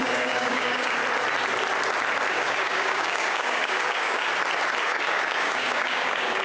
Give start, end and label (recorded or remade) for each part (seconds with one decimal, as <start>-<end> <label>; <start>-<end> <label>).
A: 0.0-1.0 remade; 1.0-2.3 recorded; 2.3-4.3 remade; 4.3-4.8 recorded; 4.8-6.4 remade

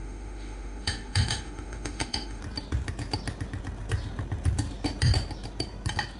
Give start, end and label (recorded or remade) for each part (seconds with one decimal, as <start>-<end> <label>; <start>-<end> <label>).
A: 0.0-2.4 remade; 2.4-6.2 recorded

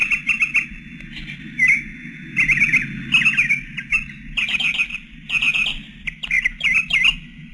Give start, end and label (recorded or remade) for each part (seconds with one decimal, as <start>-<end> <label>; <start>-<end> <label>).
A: 0.0-7.5 recorded

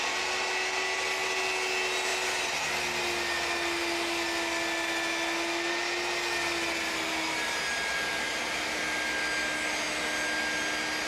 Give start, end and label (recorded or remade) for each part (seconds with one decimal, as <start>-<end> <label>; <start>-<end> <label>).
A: 0.0-11.1 recorded

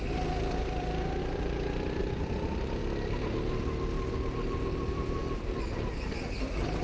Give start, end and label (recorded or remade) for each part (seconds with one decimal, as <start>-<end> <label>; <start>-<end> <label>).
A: 0.0-6.8 recorded

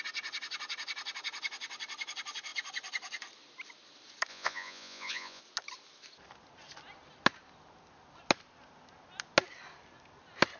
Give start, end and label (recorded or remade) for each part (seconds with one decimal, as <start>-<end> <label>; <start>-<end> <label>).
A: 0.0-4.3 recorded; 4.3-5.4 remade; 5.4-10.6 recorded

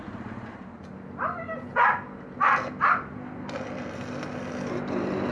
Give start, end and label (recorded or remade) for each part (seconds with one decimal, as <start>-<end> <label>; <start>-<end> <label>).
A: 0.0-5.3 recorded

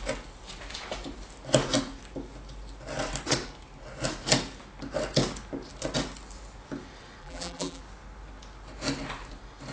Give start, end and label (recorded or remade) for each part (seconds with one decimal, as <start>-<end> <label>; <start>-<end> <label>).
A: 0.0-7.2 recorded; 7.2-7.8 remade; 7.8-9.7 recorded